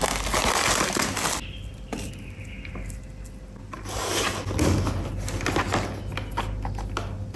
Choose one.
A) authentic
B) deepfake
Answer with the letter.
A